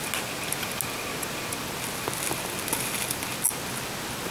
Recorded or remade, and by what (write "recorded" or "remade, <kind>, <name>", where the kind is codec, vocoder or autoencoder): recorded